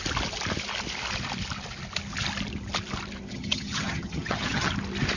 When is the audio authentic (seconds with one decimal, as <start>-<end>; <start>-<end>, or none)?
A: 0.0-3.3; 4.7-5.2